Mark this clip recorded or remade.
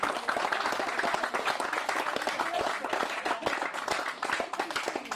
recorded